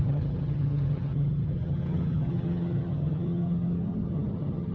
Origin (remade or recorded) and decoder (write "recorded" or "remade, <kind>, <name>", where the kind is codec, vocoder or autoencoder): remade, vocoder, HiFi-GAN